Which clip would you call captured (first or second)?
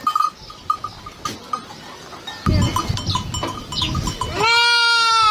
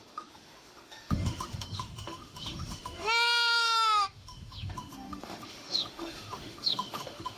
first